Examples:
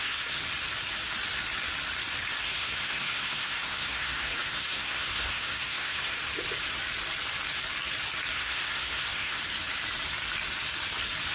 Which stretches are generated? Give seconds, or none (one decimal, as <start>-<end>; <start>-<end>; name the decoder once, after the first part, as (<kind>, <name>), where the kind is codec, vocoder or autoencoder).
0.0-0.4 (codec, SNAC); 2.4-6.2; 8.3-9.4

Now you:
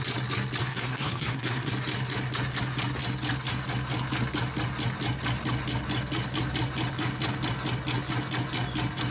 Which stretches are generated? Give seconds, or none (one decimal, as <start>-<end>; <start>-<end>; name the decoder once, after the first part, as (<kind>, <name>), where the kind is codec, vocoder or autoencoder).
0.6-1.7 (codec, SNAC)

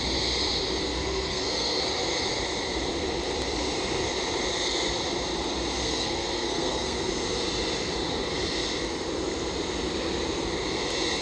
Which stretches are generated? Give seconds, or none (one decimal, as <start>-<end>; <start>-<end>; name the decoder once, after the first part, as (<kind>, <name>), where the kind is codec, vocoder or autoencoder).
0.8-1.8 (codec, SNAC); 5.8-7.1

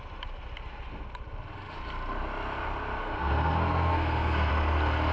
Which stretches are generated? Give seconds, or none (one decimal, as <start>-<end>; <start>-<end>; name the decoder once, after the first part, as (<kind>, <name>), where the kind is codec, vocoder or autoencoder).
3.0-4.5 (codec, SNAC)

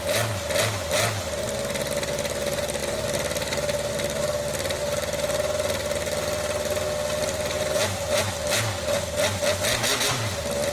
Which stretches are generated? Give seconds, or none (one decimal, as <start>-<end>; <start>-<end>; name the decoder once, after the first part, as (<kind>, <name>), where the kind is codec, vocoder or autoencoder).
none

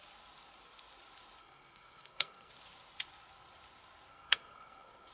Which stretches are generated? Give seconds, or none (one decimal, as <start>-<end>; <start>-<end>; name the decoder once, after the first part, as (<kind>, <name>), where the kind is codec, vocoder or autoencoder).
1.4-2.5 (codec, SNAC); 4.1-5.1

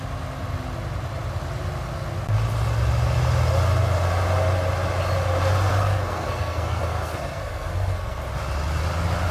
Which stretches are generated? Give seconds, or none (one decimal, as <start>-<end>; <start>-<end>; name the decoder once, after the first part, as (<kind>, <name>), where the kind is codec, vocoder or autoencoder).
5.7-8.2 (codec, SNAC)

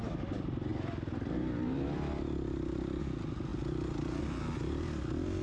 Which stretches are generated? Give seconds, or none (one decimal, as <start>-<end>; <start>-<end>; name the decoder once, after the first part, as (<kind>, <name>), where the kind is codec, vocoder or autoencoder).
none